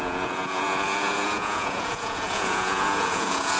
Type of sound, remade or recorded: remade